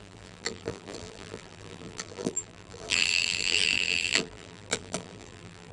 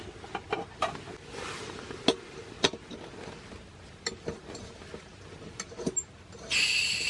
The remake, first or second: first